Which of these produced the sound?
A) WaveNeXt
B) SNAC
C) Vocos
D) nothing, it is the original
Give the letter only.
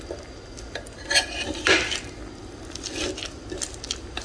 D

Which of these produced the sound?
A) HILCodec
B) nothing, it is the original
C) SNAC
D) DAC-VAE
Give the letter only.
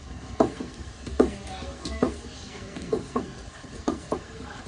C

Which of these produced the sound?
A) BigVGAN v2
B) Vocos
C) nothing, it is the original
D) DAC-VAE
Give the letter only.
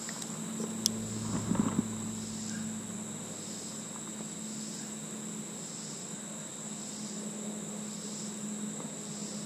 C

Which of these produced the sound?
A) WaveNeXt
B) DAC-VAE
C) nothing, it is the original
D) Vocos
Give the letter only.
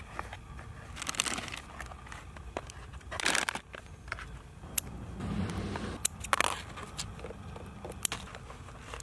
C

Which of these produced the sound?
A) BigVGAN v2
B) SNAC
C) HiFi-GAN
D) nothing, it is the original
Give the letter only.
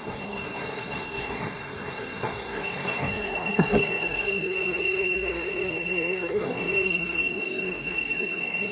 B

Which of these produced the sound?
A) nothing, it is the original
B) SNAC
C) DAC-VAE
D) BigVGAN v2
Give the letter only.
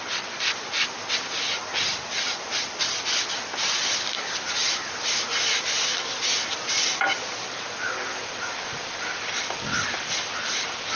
A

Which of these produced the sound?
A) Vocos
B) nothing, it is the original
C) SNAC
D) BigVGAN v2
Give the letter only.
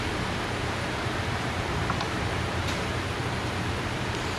D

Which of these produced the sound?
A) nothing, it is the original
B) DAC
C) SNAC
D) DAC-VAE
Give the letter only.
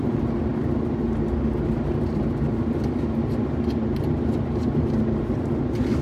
A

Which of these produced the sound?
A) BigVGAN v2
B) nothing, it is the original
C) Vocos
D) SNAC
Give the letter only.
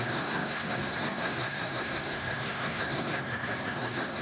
D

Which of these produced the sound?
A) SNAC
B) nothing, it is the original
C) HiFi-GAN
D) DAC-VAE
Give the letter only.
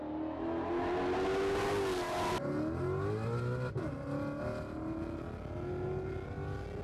B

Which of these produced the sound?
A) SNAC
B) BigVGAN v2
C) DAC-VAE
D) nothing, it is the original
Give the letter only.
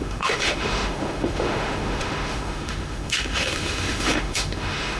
C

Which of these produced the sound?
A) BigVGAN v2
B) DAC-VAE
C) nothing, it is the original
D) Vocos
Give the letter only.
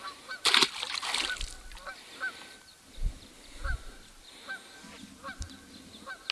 C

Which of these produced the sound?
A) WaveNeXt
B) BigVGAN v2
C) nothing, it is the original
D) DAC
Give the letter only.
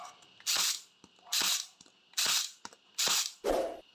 C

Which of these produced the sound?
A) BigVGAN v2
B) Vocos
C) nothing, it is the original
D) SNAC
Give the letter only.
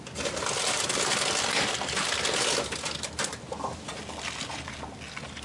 C